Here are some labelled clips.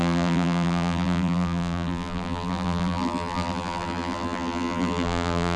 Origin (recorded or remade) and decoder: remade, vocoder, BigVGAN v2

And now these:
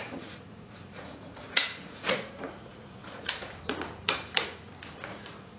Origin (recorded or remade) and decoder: remade, vocoder, Vocos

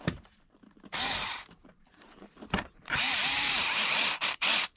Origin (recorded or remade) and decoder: remade, vocoder, BigVGAN v2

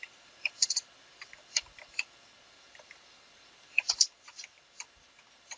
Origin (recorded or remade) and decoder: recorded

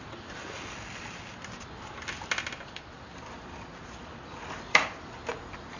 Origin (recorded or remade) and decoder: recorded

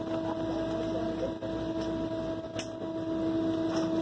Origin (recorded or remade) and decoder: recorded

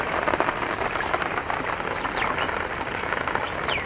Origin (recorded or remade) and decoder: recorded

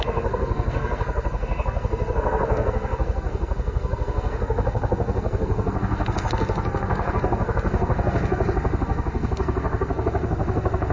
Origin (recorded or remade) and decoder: remade, codec, SNAC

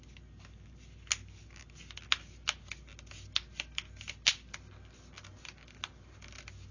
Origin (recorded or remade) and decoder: recorded